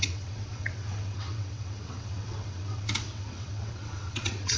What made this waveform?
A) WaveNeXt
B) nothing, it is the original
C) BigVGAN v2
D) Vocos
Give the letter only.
A